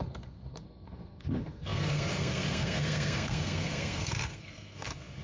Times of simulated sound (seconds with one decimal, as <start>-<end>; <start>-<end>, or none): 0.0-5.2